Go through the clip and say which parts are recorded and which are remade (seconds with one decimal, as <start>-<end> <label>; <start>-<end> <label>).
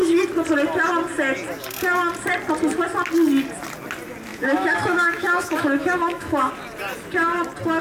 0.0-4.3 recorded; 4.3-6.5 remade; 6.5-7.8 recorded